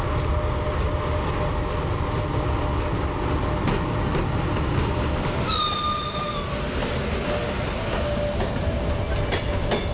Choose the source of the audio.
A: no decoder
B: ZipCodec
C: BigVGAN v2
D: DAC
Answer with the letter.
A